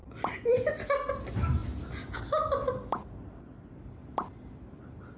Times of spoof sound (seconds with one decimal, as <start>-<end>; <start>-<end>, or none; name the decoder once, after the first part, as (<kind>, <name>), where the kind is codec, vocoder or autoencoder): none